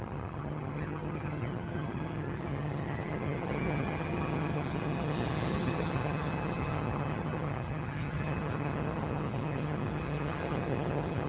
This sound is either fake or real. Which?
fake